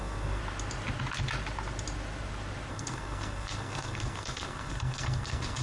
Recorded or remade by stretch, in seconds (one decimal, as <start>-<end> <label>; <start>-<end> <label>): 0.0-0.4 remade; 0.4-2.7 recorded; 2.7-5.6 remade